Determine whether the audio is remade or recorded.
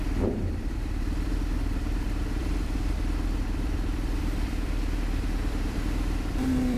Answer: remade